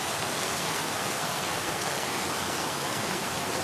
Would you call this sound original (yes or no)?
no